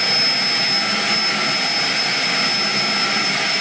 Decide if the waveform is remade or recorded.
recorded